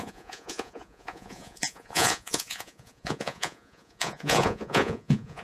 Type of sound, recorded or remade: remade